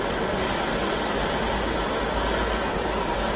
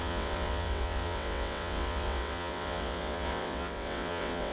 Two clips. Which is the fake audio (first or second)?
second